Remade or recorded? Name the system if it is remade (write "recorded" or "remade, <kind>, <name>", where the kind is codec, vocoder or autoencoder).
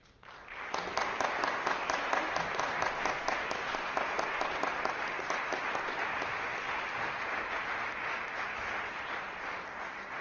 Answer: recorded